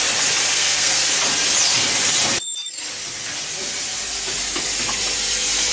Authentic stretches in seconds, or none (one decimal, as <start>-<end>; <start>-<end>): 0.0-0.5; 1.1-5.7

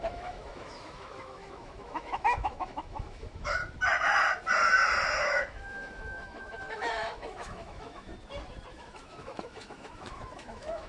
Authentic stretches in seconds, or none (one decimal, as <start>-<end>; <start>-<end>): 3.6-5.2; 8.1-8.7

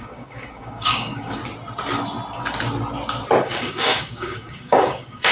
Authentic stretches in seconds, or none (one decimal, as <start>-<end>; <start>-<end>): 1.4-3.4

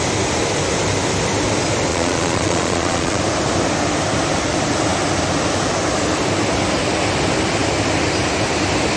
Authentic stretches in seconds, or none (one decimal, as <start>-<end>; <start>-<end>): 0.0-1.9; 3.2-9.0